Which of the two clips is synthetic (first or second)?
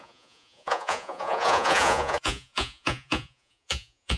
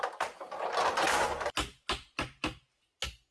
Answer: first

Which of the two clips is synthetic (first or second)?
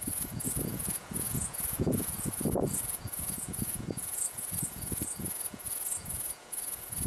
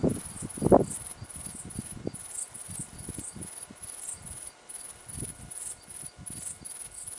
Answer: first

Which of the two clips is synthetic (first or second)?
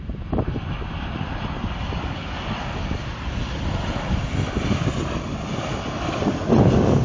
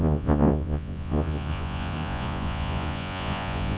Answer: second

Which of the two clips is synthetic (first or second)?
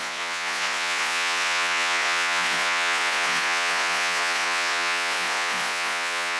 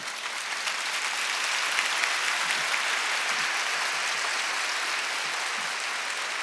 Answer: first